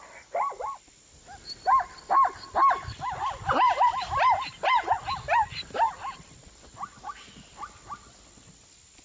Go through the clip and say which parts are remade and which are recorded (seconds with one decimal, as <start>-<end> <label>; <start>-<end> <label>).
0.0-9.0 recorded